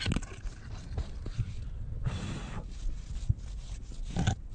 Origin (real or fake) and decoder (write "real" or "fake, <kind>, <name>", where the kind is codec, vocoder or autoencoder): real